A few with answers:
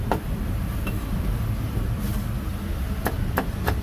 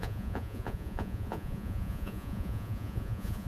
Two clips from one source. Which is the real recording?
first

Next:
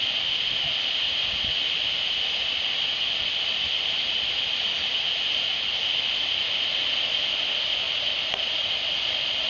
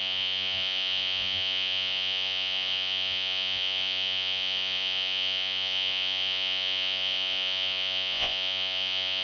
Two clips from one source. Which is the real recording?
first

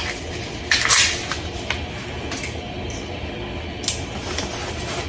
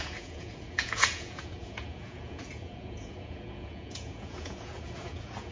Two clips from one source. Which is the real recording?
first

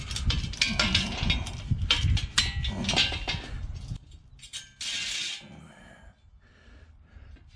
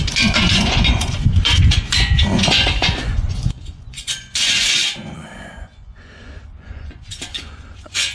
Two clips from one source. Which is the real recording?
first